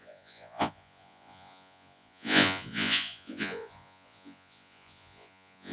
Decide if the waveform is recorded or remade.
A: remade